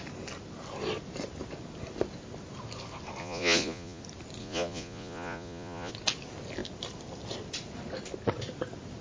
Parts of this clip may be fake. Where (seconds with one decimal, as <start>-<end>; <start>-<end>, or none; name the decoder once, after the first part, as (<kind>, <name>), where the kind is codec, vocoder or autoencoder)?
3.2-4.0 (vocoder, Vocos); 4.4-5.9

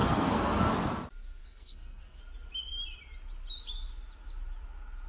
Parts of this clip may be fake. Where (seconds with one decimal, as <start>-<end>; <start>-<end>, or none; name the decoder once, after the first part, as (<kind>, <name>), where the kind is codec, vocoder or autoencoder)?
0.0-0.6 (codec, SNAC); 1.4-2.2

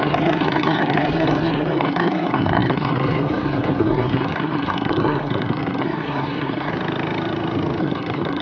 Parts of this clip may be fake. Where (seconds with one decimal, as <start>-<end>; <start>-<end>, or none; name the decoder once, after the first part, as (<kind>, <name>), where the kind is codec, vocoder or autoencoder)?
0.0-6.7 (codec, SNAC); 7.8-8.4